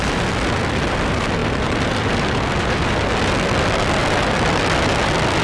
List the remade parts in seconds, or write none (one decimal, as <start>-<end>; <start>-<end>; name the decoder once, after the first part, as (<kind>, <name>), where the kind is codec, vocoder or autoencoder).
1.4-3.1 (vocoder, BigVGAN v2); 4.0-4.6